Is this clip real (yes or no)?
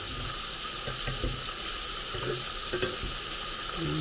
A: yes